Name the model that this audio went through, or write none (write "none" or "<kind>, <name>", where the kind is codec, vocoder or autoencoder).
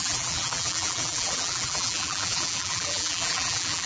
vocoder, BigVGAN v2